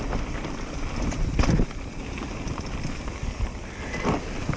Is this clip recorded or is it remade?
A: recorded